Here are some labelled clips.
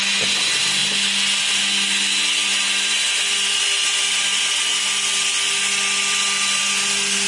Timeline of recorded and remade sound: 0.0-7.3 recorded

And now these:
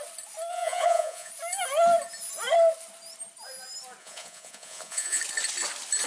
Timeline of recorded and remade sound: 0.0-0.5 recorded; 0.5-1.3 remade; 1.3-4.0 recorded; 4.0-5.2 remade; 5.2-6.1 recorded

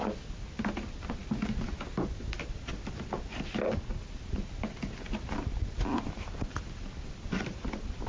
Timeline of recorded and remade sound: 0.0-8.1 recorded

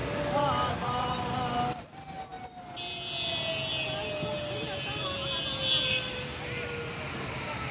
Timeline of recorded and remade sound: 0.0-7.7 recorded